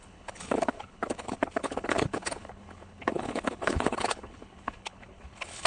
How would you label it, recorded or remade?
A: remade